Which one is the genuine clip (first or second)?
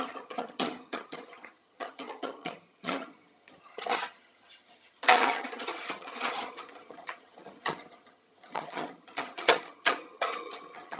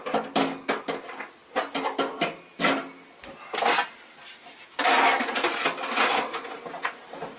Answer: second